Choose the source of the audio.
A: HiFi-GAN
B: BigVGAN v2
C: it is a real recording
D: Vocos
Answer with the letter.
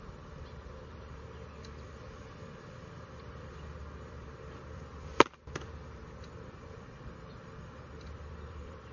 B